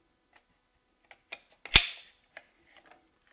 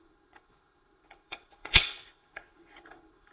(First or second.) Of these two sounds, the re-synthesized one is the second